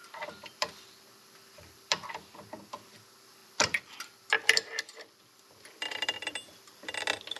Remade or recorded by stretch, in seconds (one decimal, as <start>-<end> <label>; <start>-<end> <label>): 0.0-2.1 remade; 2.1-3.4 recorded; 3.4-7.0 remade; 7.0-7.4 recorded